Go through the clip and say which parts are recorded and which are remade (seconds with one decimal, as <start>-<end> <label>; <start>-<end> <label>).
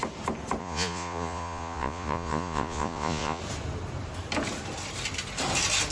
0.0-0.6 recorded; 0.6-3.4 remade; 3.4-5.9 recorded